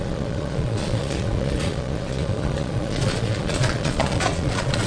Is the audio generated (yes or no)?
yes